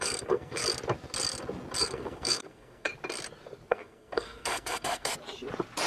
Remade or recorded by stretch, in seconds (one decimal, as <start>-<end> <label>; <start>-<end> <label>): 0.0-0.6 remade; 0.6-1.8 recorded; 1.8-2.9 remade; 2.9-3.7 recorded; 3.7-5.1 remade; 5.1-5.9 recorded